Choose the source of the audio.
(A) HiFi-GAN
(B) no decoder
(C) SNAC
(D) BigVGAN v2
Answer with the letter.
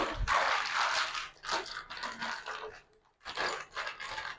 B